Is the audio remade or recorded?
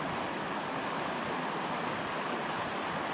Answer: recorded